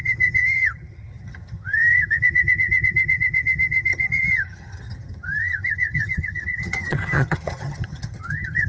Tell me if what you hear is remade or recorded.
remade